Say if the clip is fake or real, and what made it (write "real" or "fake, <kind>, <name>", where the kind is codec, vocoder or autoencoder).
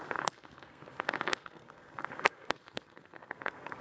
fake, codec, SNAC